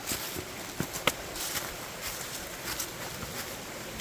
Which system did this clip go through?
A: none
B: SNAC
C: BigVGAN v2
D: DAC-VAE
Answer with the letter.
A